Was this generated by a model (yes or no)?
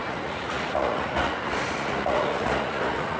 yes